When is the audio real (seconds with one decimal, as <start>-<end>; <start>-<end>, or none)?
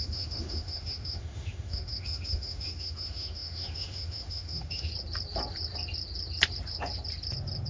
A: 4.9-7.7